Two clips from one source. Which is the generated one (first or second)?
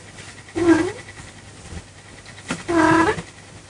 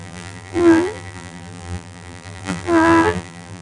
second